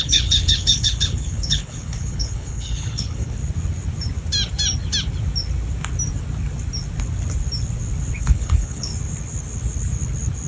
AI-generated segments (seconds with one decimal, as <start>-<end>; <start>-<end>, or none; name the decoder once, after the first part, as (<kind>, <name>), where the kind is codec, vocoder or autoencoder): 0.0-3.4 (codec, HILCodec); 8.2-8.9